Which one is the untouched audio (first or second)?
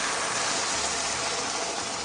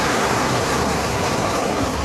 first